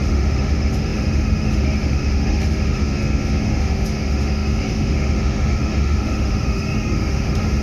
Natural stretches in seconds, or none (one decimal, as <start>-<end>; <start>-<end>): 2.8-3.4